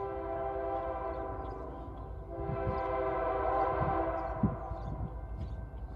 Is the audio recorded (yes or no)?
yes